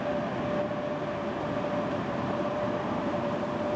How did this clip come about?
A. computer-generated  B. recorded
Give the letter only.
B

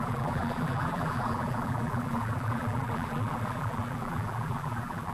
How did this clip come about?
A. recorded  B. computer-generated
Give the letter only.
B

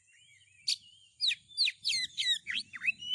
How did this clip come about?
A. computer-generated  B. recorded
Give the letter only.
B